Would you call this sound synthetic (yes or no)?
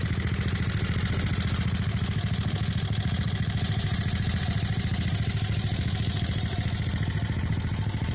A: no